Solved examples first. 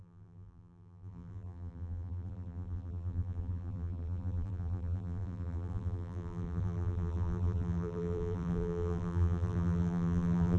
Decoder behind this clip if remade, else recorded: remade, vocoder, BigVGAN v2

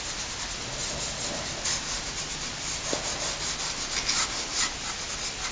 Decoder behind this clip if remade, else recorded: recorded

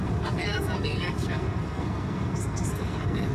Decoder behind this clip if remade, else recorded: remade, codec, SNAC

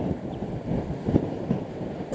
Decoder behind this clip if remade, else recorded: recorded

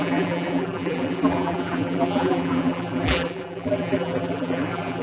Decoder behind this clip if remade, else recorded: remade, vocoder, BigVGAN v2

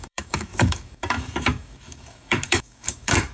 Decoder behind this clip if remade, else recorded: remade, codec, DAC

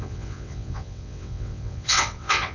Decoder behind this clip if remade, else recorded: remade, vocoder, WaveNeXt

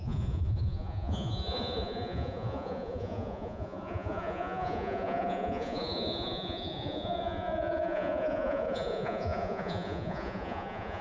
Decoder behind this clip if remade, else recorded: remade, vocoder, Vocos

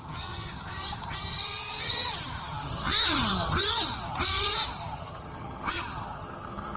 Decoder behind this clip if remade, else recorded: remade, vocoder, HiFi-GAN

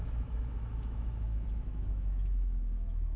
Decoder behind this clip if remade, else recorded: remade, autoencoder, DAC-VAE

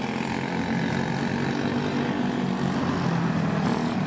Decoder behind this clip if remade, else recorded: recorded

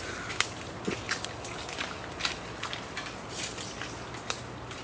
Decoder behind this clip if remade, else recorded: recorded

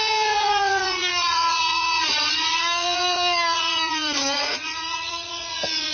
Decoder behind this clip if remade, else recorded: remade, vocoder, Vocos